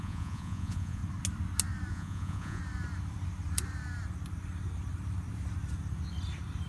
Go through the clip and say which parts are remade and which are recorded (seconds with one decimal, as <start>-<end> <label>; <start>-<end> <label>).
0.0-1.0 remade; 1.0-1.9 recorded; 1.9-2.6 remade; 2.6-6.7 recorded